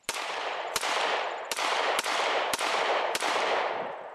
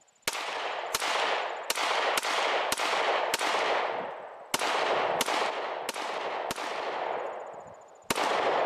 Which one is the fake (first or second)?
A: first